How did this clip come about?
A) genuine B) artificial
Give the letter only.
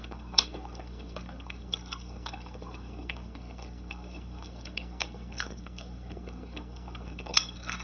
B